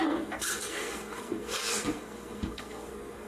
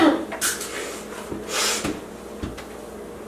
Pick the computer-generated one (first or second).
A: first